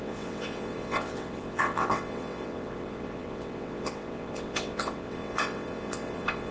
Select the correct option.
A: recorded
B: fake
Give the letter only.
B